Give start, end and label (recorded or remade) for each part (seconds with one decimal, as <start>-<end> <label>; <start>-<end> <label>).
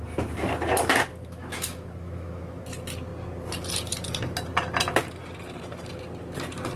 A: 0.0-1.1 recorded; 1.1-2.6 remade; 2.6-6.8 recorded